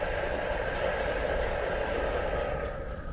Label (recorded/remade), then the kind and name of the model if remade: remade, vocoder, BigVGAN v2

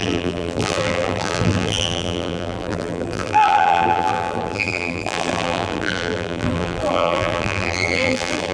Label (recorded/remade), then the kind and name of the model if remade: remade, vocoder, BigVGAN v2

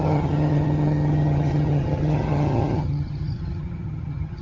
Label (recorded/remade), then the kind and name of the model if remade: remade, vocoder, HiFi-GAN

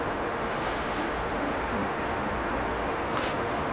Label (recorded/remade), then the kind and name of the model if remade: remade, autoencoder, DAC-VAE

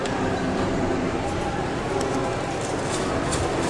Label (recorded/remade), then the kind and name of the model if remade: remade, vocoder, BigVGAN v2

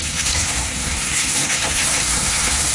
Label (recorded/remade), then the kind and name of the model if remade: remade, codec, SNAC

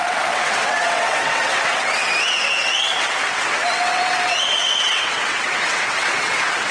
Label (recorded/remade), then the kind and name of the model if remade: remade, vocoder, WaveNeXt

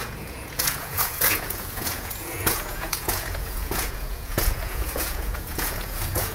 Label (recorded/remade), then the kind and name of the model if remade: remade, vocoder, Vocos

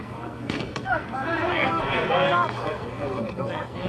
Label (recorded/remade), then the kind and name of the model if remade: remade, codec, SNAC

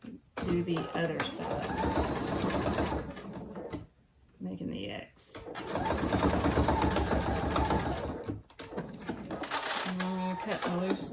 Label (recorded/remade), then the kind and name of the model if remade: recorded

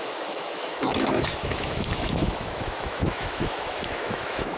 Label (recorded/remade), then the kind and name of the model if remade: remade, autoencoder, DAC-VAE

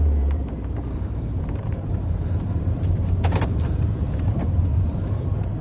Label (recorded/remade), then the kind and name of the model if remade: remade, vocoder, BigVGAN v2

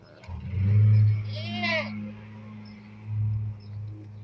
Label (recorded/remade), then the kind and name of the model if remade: recorded